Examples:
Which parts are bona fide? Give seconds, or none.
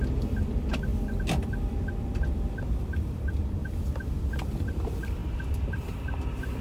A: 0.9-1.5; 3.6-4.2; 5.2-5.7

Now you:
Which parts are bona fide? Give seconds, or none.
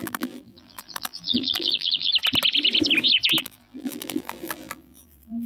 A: 2.1-3.4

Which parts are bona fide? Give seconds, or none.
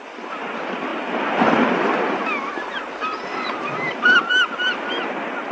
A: 0.0-0.9; 4.2-5.5